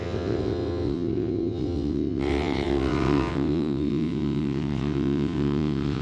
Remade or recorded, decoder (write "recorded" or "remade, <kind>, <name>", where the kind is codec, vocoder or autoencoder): remade, vocoder, WaveNeXt